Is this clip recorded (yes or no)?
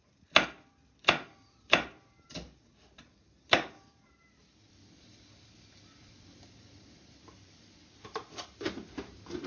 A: no